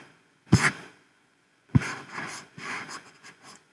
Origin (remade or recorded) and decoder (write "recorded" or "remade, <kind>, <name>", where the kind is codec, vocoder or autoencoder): remade, vocoder, Vocos